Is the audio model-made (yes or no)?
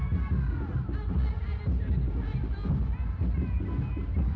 no